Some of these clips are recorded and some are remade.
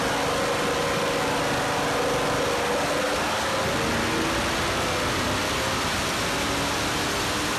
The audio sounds recorded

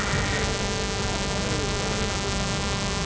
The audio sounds recorded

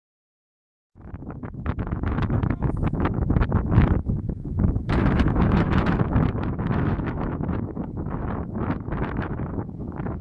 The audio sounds remade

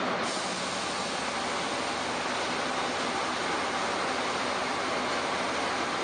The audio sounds recorded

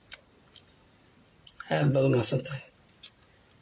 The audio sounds remade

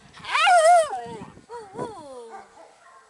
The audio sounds recorded